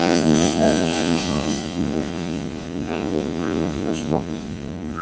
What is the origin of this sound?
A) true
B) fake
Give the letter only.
B